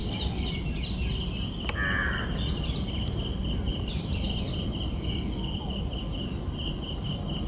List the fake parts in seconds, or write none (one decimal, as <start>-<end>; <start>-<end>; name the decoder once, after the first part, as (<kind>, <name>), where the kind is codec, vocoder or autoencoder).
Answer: 0.0-0.6 (vocoder, BigVGAN v2); 3.7-6.3

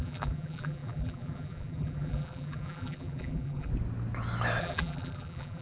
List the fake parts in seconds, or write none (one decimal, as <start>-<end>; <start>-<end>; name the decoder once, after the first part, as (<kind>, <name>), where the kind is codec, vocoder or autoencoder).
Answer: 0.0-3.7 (vocoder, BigVGAN v2); 4.6-5.6

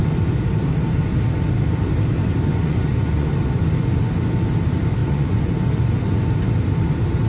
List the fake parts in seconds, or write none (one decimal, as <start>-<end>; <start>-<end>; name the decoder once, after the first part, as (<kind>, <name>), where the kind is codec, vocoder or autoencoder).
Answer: 2.5-3.3 (vocoder, Vocos); 5.0-5.5